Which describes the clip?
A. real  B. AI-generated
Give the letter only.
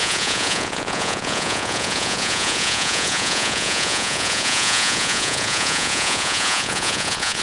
B